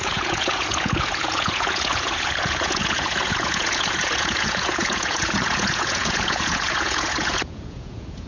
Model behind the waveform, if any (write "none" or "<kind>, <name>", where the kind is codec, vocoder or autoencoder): vocoder, Vocos